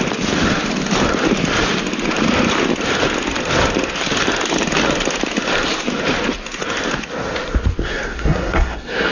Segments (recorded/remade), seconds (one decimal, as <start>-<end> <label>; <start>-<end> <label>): 0.0-7.8 recorded; 7.8-9.1 remade